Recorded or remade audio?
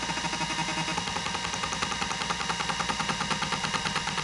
recorded